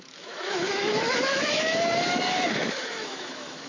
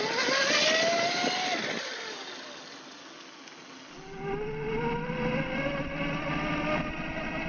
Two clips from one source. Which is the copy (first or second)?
first